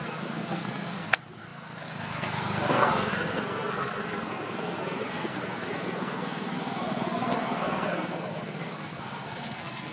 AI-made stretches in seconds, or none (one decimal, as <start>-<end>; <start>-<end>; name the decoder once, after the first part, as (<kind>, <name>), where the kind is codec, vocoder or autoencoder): 0.0-9.9 (codec, SNAC)